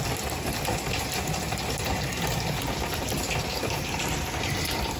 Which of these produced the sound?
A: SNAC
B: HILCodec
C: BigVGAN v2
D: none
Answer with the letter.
D